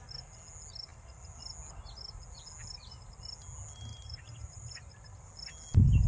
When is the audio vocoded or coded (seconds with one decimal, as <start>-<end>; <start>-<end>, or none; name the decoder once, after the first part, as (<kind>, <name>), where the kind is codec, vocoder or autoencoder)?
3.9-5.2 (vocoder, BigVGAN v2)